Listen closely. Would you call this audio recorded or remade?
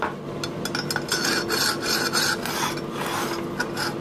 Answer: recorded